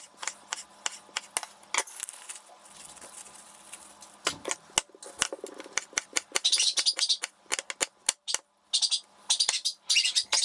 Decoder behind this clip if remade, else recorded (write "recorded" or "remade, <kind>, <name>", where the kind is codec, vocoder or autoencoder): recorded